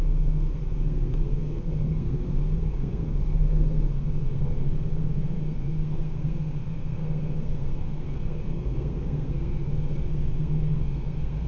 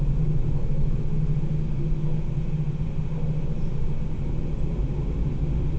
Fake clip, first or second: first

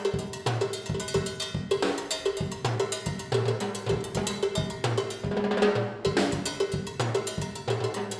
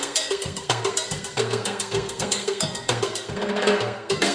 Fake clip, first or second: second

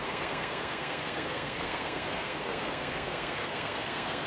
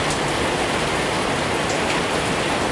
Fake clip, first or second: first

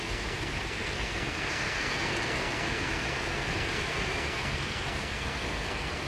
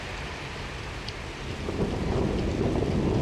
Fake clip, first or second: first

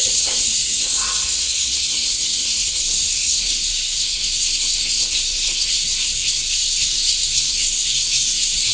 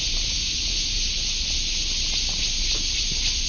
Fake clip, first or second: first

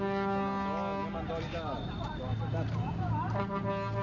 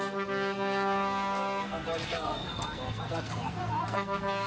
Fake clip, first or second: second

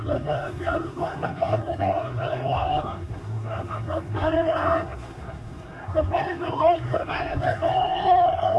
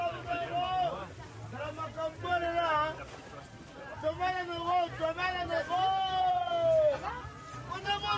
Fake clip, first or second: first